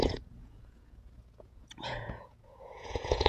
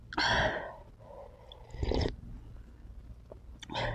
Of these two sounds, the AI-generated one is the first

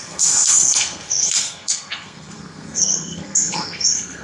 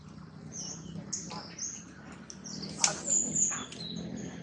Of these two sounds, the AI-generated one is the first